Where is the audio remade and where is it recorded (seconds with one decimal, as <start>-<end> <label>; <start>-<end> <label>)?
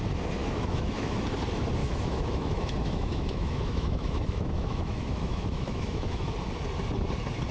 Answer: 0.0-0.4 recorded; 0.4-1.2 remade; 1.2-1.8 recorded; 1.8-6.3 remade; 6.3-7.5 recorded